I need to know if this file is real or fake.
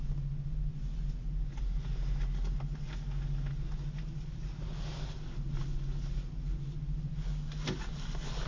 real